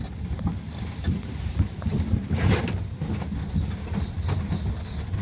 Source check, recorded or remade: recorded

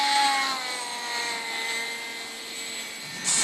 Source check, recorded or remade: recorded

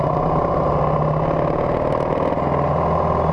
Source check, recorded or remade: recorded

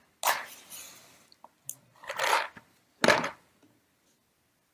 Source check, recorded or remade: recorded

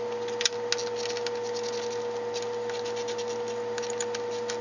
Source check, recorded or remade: recorded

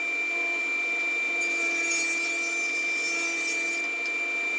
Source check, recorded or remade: recorded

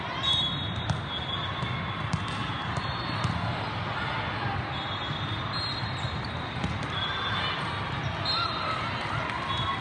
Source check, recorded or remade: recorded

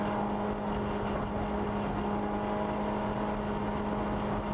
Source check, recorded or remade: recorded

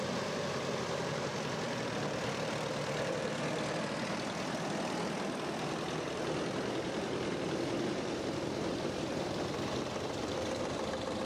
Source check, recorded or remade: remade